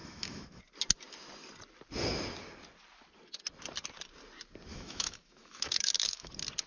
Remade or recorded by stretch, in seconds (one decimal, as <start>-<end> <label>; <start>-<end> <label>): 0.0-0.6 remade; 0.6-4.7 recorded; 4.7-6.3 remade; 6.3-6.7 recorded